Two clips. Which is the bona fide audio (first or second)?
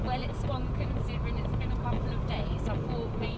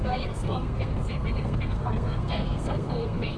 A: first